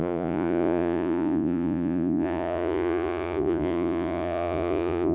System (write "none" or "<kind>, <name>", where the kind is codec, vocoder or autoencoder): vocoder, Vocos